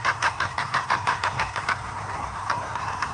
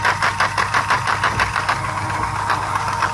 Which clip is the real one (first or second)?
second